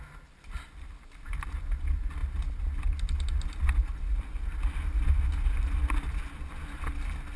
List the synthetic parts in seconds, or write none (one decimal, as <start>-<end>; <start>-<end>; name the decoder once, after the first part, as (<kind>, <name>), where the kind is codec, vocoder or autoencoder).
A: none